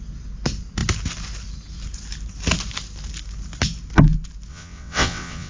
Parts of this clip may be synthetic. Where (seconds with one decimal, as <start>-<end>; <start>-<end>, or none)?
4.5-5.5